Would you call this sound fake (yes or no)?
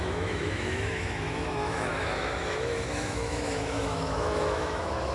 yes